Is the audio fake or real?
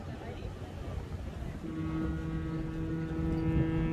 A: real